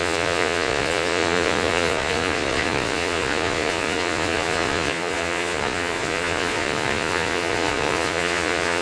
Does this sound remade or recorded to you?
remade